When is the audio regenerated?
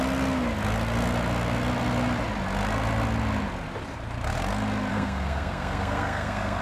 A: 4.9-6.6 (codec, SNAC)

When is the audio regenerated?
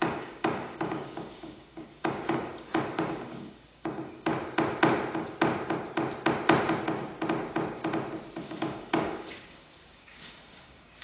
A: 0.0-4.3 (codec, DAC); 8.4-11.0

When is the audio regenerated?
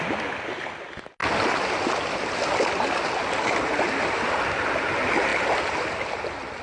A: none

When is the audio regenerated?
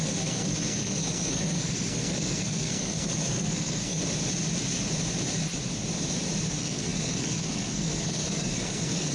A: 0.0-4.0 (codec, SNAC); 6.5-9.1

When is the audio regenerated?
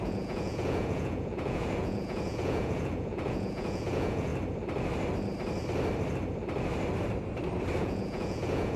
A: 0.0-4.3 (vocoder, Vocos); 7.8-8.8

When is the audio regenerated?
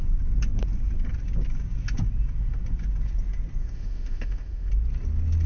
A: 3.6-4.7 (autoencoder, DAC-VAE)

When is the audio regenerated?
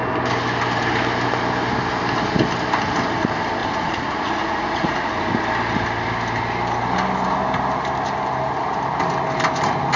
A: 3.6-5.1 (vocoder, Vocos)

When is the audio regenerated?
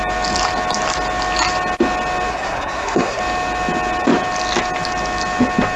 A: 2.3-3.2 (codec, SNAC)